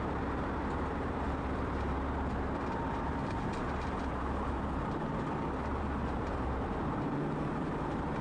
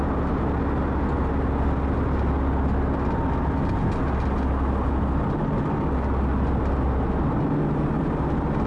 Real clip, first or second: second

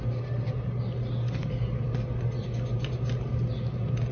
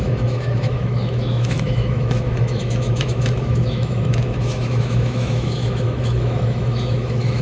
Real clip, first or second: first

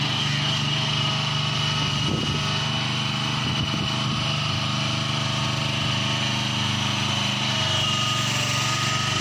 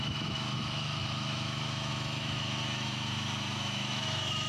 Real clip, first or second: first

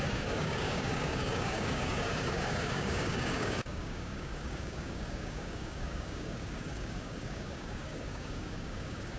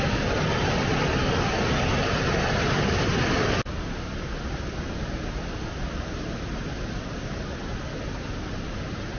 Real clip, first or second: second